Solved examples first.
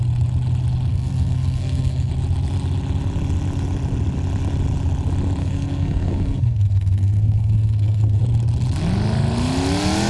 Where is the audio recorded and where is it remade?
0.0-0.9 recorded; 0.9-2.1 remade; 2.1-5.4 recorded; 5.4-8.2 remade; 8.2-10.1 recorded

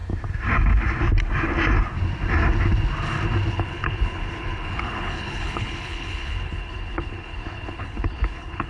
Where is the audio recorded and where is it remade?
0.0-3.5 recorded; 3.5-8.7 remade